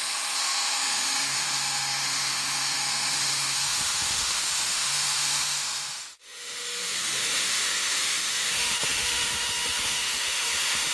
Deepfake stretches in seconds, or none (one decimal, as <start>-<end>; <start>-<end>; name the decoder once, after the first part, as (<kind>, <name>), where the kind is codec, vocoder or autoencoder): 0.0-10.9 (autoencoder, DAC-VAE)